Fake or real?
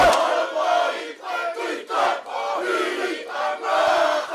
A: real